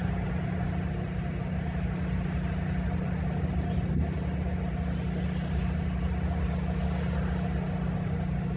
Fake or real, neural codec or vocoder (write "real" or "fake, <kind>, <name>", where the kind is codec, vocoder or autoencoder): real